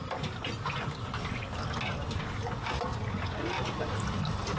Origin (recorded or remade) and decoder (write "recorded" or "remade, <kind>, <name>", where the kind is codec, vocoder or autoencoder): recorded